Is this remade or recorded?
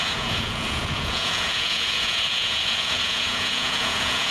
remade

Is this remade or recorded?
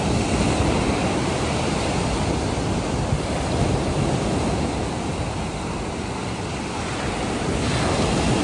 recorded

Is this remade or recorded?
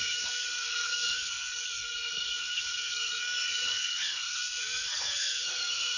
remade